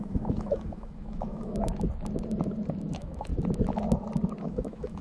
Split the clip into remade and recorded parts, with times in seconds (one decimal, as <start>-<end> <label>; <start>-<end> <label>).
0.0-1.7 remade; 1.7-2.9 recorded; 2.9-3.3 remade; 3.3-4.4 recorded; 4.4-5.0 remade